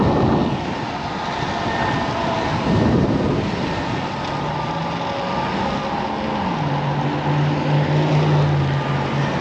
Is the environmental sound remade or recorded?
recorded